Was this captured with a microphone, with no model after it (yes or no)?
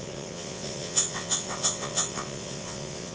no